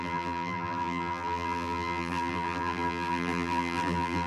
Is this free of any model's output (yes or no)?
no